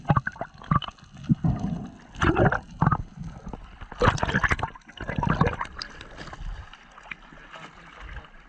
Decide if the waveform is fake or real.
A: real